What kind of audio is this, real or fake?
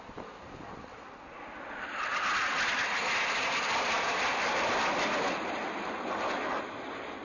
real